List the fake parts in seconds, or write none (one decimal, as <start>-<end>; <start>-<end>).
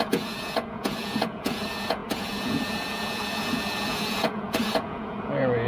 0.0-5.7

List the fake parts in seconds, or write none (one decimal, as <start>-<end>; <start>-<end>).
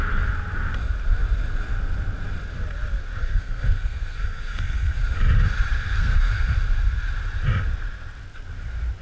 3.2-5.0; 5.7-6.3